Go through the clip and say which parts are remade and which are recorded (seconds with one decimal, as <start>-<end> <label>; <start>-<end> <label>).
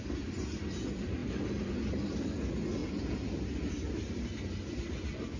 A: 0.0-5.4 recorded